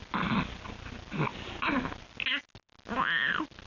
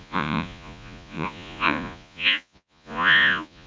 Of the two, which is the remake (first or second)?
second